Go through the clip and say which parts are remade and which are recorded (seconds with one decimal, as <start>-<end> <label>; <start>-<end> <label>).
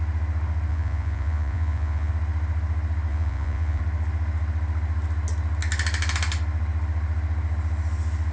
0.0-0.7 recorded; 0.7-2.1 remade; 2.1-3.1 recorded; 3.1-3.8 remade; 3.8-8.3 recorded